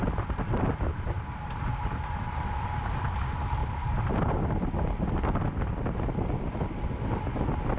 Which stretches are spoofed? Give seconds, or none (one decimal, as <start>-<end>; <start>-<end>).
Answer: none